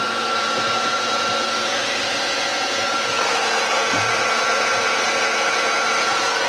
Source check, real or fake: fake